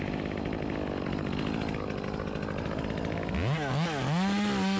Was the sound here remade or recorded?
recorded